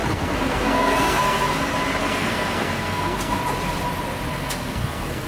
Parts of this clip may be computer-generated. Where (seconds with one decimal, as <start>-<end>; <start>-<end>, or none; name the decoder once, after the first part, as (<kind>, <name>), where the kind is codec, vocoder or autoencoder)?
0.0-1.6 (codec, SNAC); 2.0-3.4; 4.3-5.3